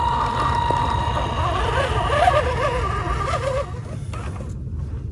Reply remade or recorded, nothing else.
recorded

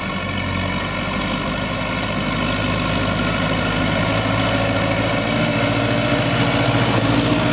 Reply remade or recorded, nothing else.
recorded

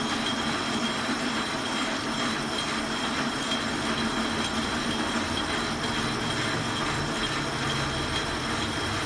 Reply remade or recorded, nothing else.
recorded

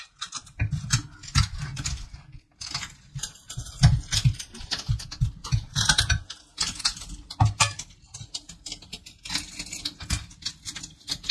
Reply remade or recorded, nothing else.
recorded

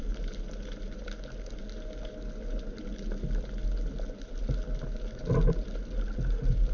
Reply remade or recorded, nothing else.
recorded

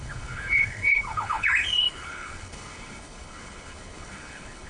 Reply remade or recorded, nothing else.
remade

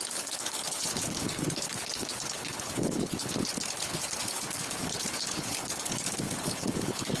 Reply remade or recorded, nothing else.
remade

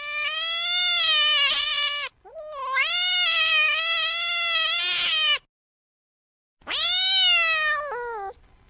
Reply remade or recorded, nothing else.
recorded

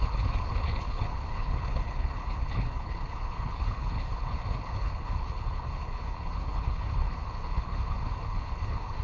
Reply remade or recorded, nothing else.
remade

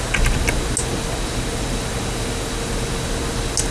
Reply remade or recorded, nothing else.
recorded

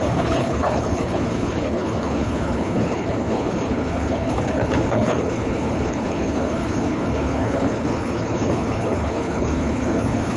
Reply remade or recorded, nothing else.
remade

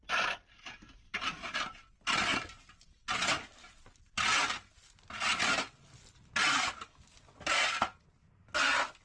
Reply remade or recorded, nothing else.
recorded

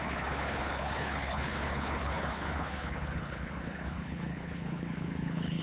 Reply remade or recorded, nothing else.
remade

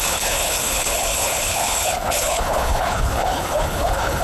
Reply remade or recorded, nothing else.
remade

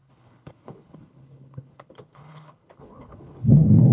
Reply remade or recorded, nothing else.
remade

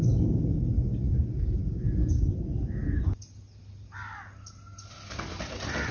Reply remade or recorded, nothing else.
recorded